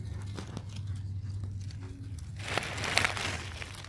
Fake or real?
real